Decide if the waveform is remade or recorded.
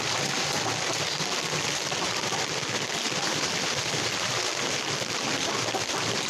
recorded